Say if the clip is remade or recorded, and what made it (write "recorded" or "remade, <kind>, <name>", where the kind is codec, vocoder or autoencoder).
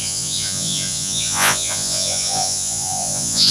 remade, vocoder, Vocos